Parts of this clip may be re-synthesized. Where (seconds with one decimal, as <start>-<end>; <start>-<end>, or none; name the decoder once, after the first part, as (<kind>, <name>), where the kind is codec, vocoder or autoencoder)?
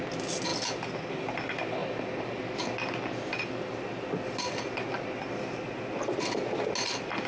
none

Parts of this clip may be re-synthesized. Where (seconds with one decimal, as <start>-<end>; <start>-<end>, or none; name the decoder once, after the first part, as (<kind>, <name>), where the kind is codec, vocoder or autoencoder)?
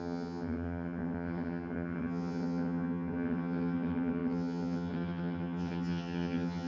0.0-6.7 (vocoder, HiFi-GAN)